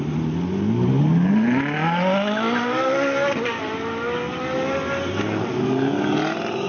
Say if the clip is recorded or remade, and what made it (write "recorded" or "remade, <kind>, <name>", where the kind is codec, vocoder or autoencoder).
recorded